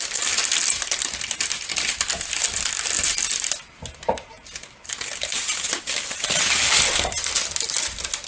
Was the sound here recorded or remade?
recorded